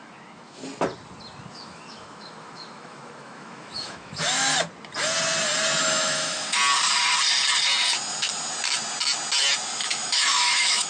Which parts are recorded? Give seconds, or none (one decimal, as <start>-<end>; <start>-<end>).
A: 0.6-1.5; 4.5-5.8; 6.6-9.8